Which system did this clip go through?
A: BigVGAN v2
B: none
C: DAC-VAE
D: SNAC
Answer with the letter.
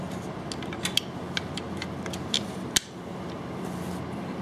B